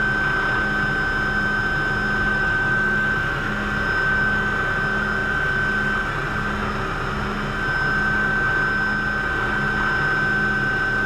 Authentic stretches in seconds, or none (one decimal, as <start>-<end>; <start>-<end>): 0.0-2.3; 3.5-11.1